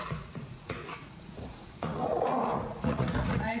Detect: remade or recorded remade